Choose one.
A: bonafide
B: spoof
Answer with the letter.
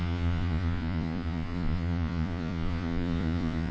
B